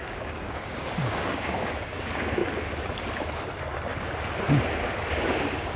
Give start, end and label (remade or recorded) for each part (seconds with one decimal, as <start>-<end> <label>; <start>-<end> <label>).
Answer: 0.0-2.4 remade; 2.4-5.1 recorded; 5.1-5.8 remade